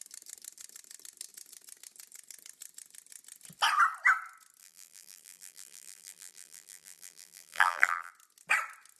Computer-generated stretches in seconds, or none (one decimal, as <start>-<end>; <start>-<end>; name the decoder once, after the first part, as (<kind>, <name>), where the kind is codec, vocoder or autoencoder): 4.6-8.1 (vocoder, BigVGAN v2)